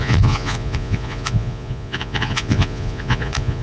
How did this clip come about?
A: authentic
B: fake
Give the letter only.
B